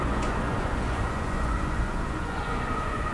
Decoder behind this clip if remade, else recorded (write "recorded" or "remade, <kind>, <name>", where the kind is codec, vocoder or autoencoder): remade, vocoder, Vocos